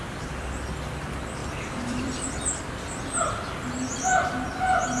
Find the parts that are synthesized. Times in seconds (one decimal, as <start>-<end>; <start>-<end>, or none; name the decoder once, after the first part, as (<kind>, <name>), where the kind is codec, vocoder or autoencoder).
1.4-2.6 (vocoder, BigVGAN v2)